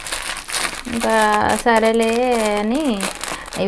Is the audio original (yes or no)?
yes